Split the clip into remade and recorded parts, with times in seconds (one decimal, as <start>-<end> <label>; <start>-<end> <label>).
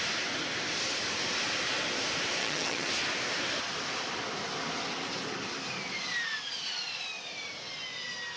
0.0-2.4 recorded; 2.4-2.9 remade; 2.9-8.4 recorded